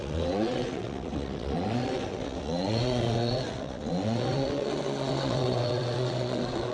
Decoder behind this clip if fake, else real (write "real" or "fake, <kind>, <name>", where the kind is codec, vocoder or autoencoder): fake, vocoder, WaveNeXt